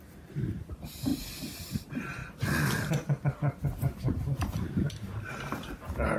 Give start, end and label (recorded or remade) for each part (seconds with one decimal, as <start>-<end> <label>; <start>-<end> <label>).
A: 0.0-2.2 remade; 2.2-4.9 recorded; 4.9-6.2 remade